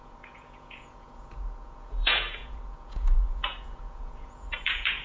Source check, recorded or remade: remade